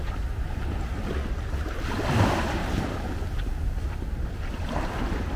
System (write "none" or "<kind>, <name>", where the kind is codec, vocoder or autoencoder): none